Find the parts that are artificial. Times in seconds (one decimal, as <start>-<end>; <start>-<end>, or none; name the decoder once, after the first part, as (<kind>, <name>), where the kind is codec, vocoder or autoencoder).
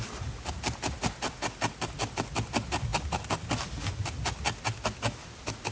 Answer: none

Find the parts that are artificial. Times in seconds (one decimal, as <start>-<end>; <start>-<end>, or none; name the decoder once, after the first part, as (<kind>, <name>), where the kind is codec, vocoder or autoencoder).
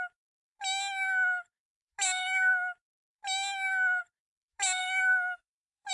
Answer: 4.8-5.9 (autoencoder, DAC-VAE)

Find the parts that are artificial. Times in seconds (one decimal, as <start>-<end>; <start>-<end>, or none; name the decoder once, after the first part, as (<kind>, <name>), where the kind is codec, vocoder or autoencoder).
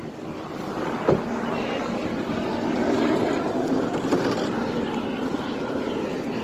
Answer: none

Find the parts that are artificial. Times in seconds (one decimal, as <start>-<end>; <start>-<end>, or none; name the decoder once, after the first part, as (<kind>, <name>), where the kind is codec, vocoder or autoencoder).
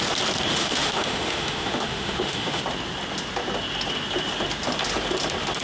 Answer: 0.5-2.6 (autoencoder, DAC-VAE)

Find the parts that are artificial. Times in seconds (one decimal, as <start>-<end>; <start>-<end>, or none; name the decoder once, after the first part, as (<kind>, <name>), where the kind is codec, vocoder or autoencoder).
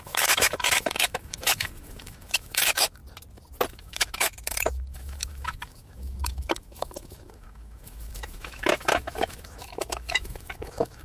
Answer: 0.0-3.0 (autoencoder, DAC-VAE); 3.7-11.0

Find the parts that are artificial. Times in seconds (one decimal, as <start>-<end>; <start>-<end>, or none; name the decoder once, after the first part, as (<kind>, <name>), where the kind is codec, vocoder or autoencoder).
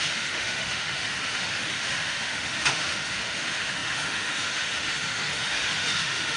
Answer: 0.0-6.4 (autoencoder, DAC-VAE)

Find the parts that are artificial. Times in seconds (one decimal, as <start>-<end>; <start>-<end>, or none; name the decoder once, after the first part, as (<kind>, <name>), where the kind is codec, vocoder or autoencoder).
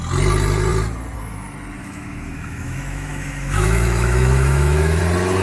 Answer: 1.8-5.0 (autoencoder, DAC-VAE)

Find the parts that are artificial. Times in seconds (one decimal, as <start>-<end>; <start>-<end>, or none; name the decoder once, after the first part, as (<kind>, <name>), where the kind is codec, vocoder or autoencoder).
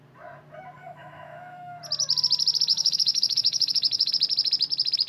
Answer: 0.8-1.8 (autoencoder, DAC-VAE); 2.7-4.1